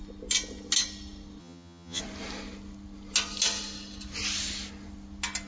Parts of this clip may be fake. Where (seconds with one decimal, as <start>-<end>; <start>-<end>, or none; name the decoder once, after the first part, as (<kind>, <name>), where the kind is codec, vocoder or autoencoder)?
1.4-2.0 (vocoder, HiFi-GAN)